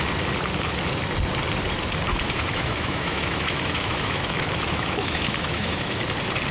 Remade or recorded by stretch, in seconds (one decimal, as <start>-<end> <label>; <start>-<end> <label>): 0.0-2.1 recorded; 2.1-6.0 remade; 6.0-6.5 recorded